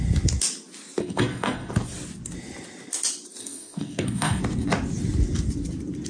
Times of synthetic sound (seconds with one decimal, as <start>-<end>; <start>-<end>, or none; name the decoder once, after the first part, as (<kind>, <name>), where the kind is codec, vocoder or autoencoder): 1.0-1.7 (codec, SNAC); 3.4-4.4